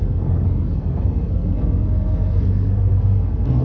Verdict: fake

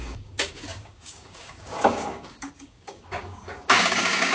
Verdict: fake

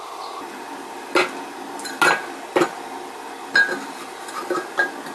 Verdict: real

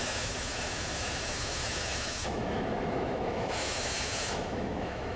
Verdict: fake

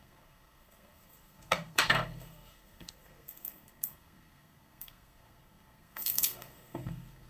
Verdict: fake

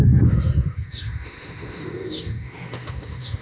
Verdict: fake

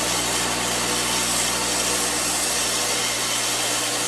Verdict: real